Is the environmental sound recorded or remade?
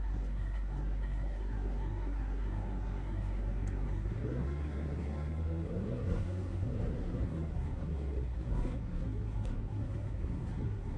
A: remade